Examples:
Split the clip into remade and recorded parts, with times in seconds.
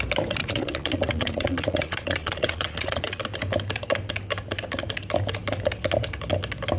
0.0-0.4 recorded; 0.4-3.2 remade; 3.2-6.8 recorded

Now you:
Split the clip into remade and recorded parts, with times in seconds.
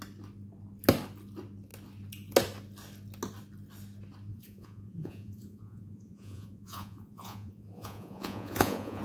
0.0-4.3 recorded; 4.3-9.0 remade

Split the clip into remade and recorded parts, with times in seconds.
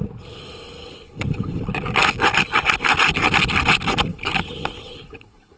0.0-0.8 recorded; 0.8-1.6 remade; 1.6-4.1 recorded; 4.1-5.6 remade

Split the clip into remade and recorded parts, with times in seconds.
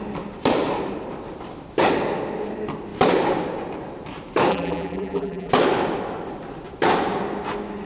0.0-4.5 recorded; 4.5-5.5 remade; 5.5-7.9 recorded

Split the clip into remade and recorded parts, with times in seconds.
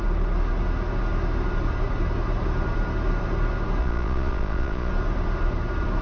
0.0-3.8 recorded; 3.8-4.9 remade; 4.9-6.0 recorded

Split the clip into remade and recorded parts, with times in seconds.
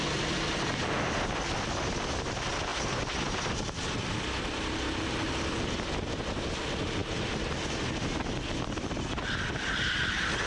0.0-2.7 recorded; 2.7-4.4 remade; 4.4-10.5 recorded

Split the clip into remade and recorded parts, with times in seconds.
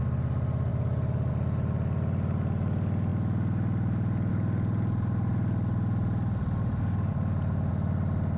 0.0-8.4 recorded